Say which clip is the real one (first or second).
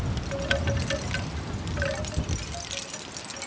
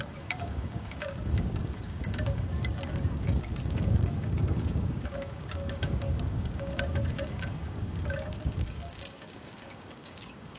first